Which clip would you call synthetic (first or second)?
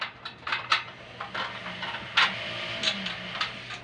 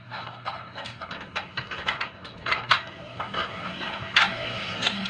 second